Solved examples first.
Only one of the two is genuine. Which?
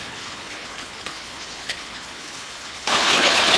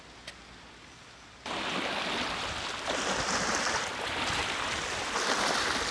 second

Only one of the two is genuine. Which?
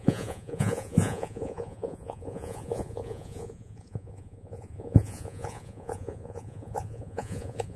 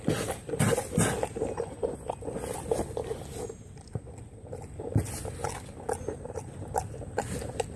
second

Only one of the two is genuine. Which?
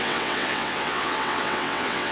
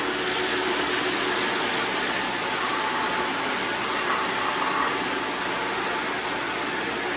second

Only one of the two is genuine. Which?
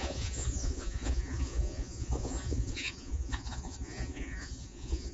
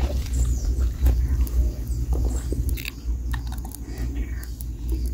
second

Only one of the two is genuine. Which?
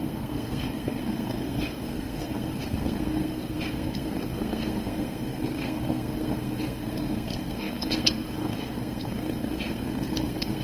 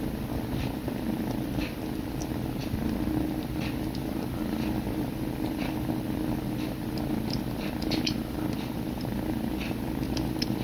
second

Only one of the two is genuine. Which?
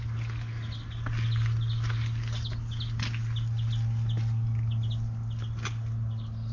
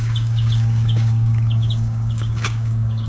first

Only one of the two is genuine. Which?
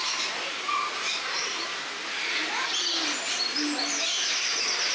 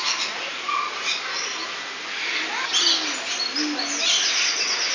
second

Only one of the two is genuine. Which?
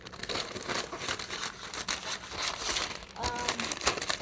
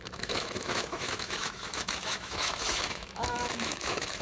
first